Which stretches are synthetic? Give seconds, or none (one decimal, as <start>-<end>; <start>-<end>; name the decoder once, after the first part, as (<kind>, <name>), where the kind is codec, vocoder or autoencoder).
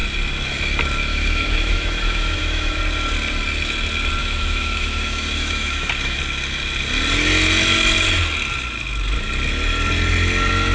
1.1-2.8 (autoencoder, DAC-VAE); 4.2-6.2